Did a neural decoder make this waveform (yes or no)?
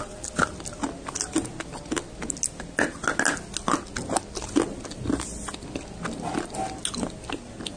no